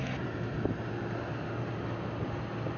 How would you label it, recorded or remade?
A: recorded